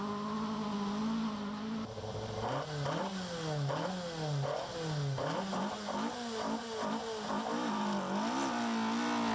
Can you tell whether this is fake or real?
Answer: real